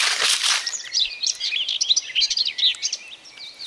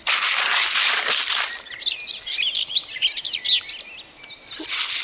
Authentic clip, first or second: second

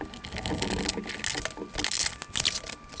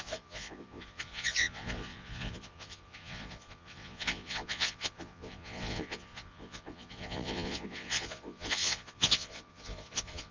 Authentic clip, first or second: first